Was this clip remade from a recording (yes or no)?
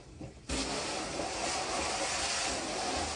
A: no